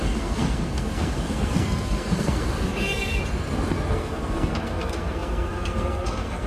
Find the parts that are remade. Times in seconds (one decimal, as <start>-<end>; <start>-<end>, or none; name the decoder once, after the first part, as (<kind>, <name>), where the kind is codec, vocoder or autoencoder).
0.0-3.2 (codec, SNAC); 3.9-6.5